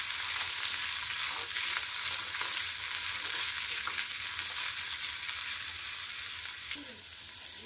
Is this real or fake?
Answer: real